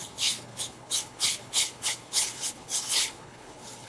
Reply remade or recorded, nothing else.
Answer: remade